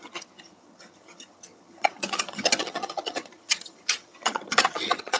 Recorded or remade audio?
remade